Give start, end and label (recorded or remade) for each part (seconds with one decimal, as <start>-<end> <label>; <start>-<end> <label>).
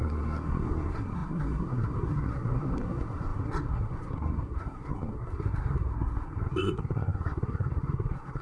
0.0-8.4 remade